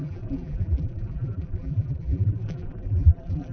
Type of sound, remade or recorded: remade